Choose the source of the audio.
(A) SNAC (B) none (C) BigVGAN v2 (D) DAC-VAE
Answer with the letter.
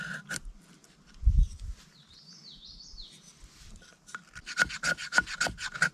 B